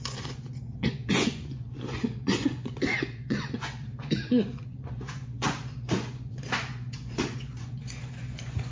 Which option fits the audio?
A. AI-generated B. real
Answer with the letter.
A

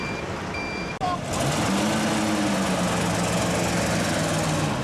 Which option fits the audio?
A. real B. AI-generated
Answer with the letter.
A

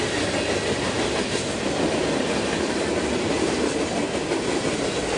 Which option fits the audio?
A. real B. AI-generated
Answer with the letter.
A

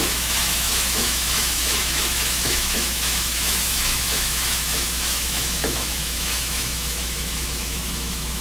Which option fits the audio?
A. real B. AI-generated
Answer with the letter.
B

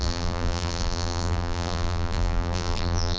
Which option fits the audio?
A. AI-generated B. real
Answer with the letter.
A